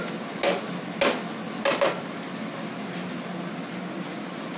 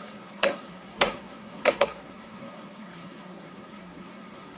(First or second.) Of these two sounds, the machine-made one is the second